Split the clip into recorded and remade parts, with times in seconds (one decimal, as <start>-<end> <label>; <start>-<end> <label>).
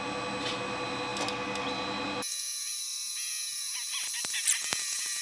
0.0-5.2 recorded